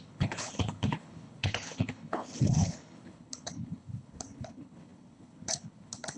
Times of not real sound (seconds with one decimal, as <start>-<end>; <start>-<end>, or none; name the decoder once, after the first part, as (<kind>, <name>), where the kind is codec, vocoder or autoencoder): 0.0-6.2 (codec, HILCodec)